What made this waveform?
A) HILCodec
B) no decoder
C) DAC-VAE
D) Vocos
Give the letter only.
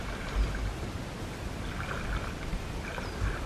B